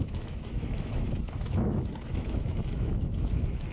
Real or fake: fake